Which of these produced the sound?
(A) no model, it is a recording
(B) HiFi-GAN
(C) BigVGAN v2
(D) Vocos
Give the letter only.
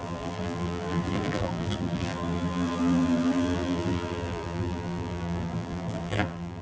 C